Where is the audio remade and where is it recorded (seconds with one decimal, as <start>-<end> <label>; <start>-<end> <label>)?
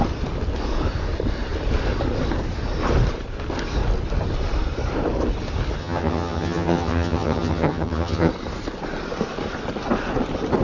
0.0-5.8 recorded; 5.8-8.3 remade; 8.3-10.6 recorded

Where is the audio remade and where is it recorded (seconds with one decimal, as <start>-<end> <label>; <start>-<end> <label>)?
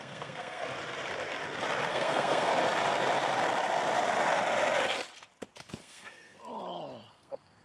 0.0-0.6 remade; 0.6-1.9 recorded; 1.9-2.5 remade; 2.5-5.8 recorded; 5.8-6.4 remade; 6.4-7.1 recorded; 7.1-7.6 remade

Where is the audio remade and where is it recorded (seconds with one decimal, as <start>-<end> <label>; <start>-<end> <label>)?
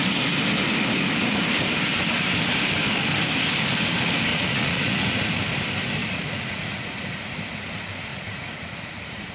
0.0-4.3 recorded; 4.3-5.2 remade; 5.2-6.0 recorded; 6.0-7.3 remade; 7.3-8.1 recorded; 8.1-9.3 remade